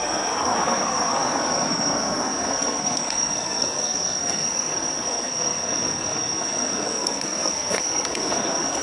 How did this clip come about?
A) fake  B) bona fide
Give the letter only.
A